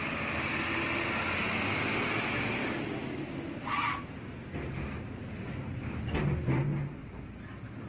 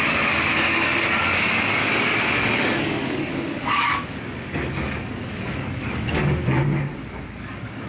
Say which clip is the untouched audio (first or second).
first